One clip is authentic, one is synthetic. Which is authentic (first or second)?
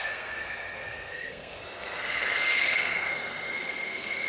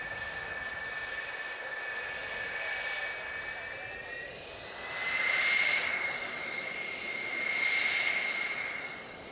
second